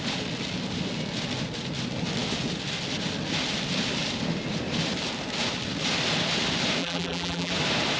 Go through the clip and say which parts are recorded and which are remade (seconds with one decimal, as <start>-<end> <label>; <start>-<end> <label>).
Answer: 0.0-6.8 recorded; 6.8-7.5 remade; 7.5-8.0 recorded